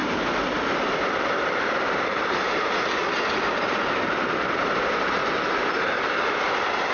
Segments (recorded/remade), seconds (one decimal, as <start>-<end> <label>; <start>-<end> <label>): 0.0-3.0 remade; 3.0-3.5 recorded; 3.5-5.2 remade; 5.2-6.4 recorded; 6.4-6.9 remade